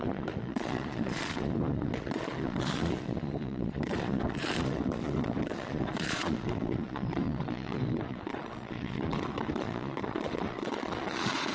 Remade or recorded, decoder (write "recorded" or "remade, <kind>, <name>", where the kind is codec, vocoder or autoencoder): remade, vocoder, Vocos